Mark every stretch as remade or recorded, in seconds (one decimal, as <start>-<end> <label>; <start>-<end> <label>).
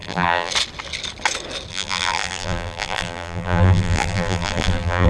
0.0-0.5 remade; 0.5-1.7 recorded; 1.7-5.1 remade